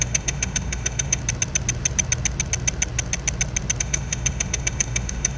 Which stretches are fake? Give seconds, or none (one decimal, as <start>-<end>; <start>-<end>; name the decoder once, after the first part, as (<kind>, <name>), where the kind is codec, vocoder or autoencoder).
0.0-1.2 (autoencoder, DAC-VAE); 3.8-5.4